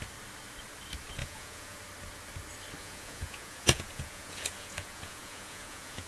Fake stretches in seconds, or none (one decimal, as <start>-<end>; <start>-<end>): 1.2-1.8; 2.8-6.1